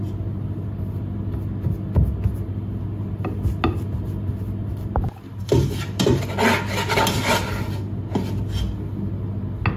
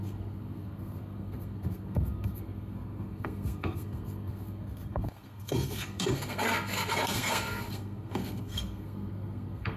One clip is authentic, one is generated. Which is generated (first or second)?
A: second